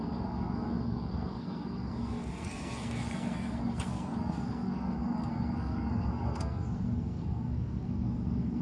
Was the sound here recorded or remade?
remade